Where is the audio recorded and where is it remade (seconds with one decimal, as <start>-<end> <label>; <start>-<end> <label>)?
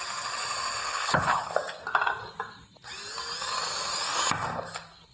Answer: 0.0-0.8 recorded; 0.8-1.5 remade; 1.5-5.1 recorded